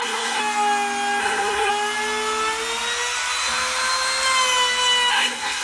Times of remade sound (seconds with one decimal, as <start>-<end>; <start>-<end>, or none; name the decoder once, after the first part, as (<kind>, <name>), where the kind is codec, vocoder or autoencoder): 0.0-0.4 (codec, SNAC); 1.2-1.7; 5.1-5.6